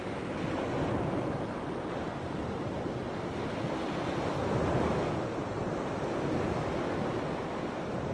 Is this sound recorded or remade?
recorded